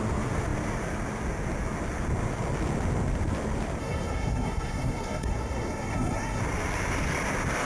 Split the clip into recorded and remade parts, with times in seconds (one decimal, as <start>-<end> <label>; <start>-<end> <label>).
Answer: 0.0-3.8 recorded; 3.8-6.4 remade; 6.4-7.6 recorded